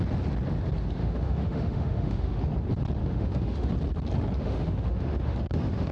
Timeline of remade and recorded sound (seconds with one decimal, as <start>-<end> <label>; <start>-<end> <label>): 0.0-1.0 recorded; 1.0-2.4 remade; 2.4-3.0 recorded; 3.0-3.7 remade; 3.7-4.4 recorded; 4.4-5.9 remade